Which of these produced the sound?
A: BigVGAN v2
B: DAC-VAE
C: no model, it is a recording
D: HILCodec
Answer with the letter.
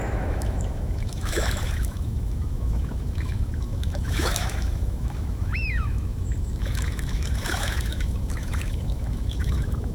B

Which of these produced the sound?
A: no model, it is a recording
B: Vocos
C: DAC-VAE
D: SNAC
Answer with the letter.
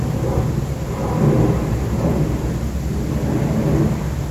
A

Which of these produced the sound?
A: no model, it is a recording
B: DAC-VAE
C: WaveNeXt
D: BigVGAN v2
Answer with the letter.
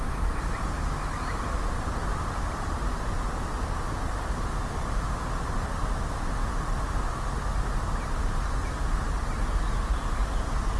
A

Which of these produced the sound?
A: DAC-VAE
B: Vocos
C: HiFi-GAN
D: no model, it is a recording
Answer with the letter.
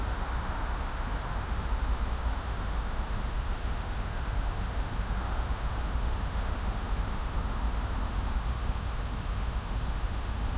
A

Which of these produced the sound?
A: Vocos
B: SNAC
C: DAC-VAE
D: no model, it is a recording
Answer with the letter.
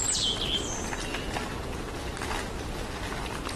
D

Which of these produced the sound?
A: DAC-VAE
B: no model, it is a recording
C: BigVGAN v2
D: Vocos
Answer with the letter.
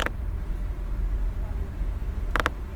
B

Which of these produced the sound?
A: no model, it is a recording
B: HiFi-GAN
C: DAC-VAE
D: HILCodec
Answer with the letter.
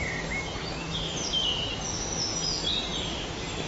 A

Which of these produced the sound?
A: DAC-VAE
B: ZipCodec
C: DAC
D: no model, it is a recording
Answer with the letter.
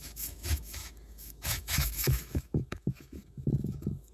A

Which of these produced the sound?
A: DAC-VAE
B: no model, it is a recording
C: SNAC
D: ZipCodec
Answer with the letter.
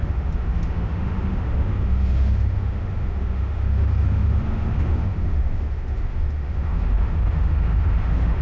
A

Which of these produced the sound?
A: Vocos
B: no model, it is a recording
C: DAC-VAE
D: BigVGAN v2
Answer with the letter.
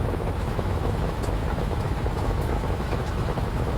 C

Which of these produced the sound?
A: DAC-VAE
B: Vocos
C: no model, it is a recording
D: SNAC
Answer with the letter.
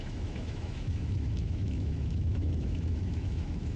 A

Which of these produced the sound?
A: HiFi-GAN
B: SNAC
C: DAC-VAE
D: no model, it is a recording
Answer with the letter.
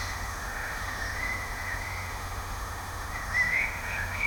C